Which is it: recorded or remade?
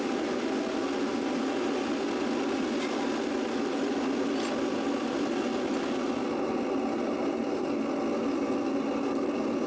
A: recorded